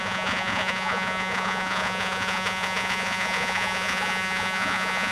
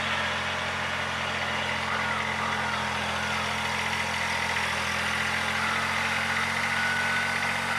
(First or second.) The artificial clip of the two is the first